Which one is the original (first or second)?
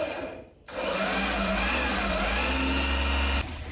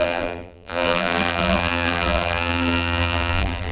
first